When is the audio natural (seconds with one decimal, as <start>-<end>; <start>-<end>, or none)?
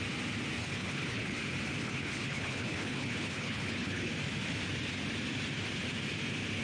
0.0-0.6; 1.4-1.8; 4.1-6.6